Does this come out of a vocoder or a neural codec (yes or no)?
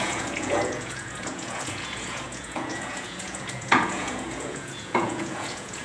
yes